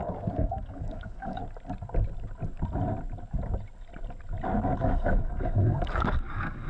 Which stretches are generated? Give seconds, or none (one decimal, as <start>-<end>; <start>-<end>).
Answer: 0.0-1.4; 4.8-6.7